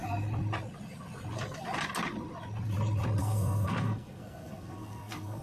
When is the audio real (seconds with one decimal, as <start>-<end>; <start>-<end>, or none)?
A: 0.0-3.2